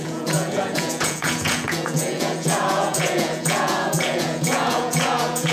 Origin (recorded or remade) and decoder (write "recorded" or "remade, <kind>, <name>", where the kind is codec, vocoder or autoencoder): remade, vocoder, Vocos